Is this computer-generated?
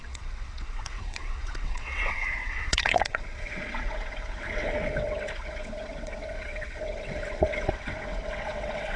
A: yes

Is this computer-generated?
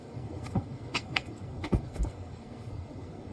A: yes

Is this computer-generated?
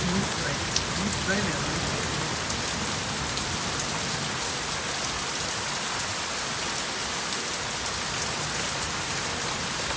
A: no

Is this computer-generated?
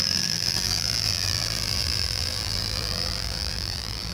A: yes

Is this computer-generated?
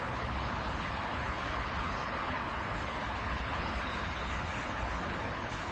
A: yes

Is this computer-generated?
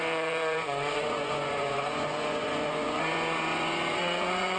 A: yes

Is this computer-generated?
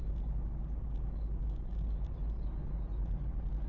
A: no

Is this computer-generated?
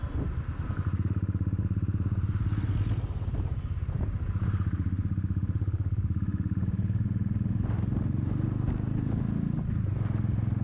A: no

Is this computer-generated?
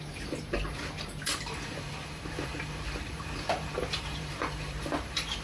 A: yes